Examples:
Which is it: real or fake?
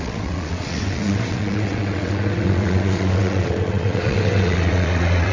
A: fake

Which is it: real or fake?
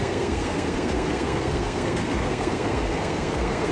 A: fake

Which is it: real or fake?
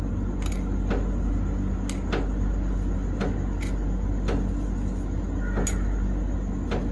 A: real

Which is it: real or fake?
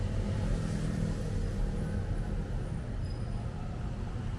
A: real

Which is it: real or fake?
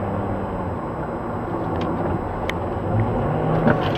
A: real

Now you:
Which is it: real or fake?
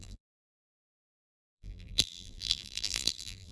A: fake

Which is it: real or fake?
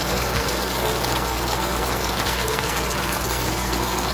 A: fake